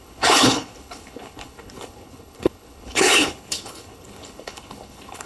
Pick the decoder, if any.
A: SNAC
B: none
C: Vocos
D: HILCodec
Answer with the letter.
D